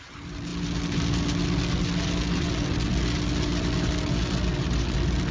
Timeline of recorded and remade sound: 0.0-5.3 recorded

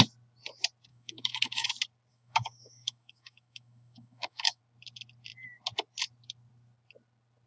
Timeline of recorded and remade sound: 0.0-0.9 recorded; 0.9-1.7 remade; 1.7-2.1 recorded; 2.1-4.6 remade; 4.6-7.5 recorded

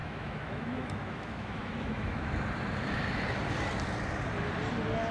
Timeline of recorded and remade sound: 0.0-2.3 remade; 2.3-5.1 recorded

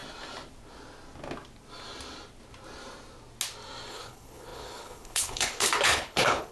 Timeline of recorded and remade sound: 0.0-3.9 recorded; 3.9-6.5 remade

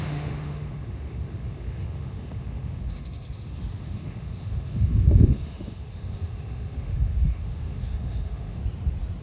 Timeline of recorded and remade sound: 0.0-8.6 remade; 8.6-9.2 recorded

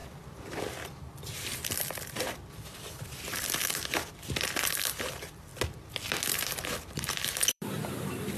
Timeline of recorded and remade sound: 0.0-5.5 remade; 5.5-6.3 recorded; 6.3-8.4 remade

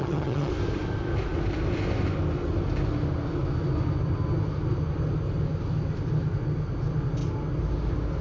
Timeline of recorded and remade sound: 0.0-0.5 remade; 0.5-8.2 recorded

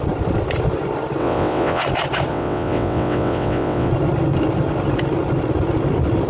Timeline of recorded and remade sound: 0.0-1.2 recorded; 1.2-1.8 remade; 1.8-2.3 recorded; 2.3-3.9 remade; 3.9-6.3 recorded